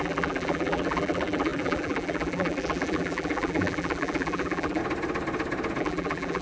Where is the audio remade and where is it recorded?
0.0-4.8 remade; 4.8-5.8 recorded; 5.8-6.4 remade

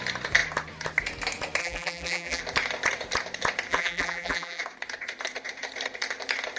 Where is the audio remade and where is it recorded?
0.0-1.6 recorded; 1.6-2.4 remade; 2.4-3.7 recorded; 3.7-4.6 remade; 4.6-6.6 recorded

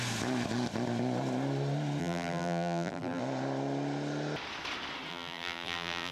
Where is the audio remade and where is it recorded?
0.0-2.0 recorded; 2.0-3.2 remade; 3.2-5.1 recorded; 5.1-6.1 remade

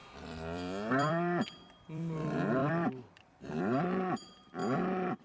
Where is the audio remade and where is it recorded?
0.0-5.2 remade

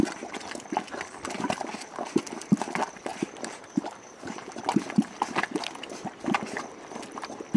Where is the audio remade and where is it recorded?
0.0-3.1 recorded; 3.1-4.6 remade; 4.6-7.6 recorded

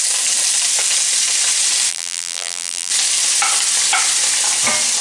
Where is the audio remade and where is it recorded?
0.0-1.9 recorded; 1.9-2.9 remade; 2.9-5.0 recorded